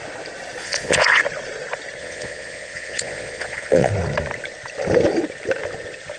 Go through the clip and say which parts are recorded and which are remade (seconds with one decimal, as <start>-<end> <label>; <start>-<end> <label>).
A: 0.0-0.6 recorded; 0.6-1.2 remade; 1.2-2.0 recorded; 2.0-3.9 remade; 3.9-6.2 recorded

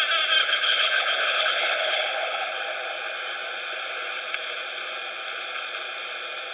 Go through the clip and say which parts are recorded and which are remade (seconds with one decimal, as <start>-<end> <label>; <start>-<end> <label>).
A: 0.0-0.4 recorded; 0.4-2.5 remade; 2.5-6.5 recorded

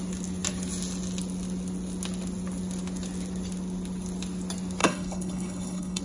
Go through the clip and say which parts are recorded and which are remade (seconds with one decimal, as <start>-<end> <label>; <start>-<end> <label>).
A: 0.0-4.8 recorded; 4.8-6.0 remade